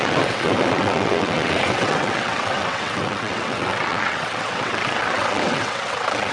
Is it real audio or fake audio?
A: fake